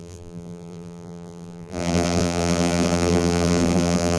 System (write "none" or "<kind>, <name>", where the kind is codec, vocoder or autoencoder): vocoder, BigVGAN v2